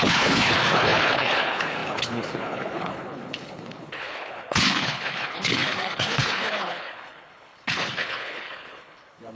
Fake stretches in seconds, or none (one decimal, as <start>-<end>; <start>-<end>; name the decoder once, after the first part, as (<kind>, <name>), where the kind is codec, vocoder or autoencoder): 0.0-9.3 (codec, HILCodec)